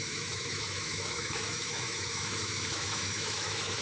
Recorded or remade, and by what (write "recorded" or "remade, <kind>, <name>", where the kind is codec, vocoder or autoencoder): remade, autoencoder, DAC-VAE